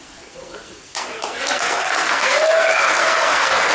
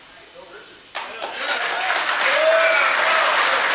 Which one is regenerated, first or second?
first